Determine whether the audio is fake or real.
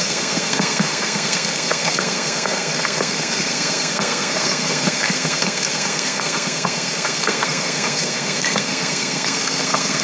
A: fake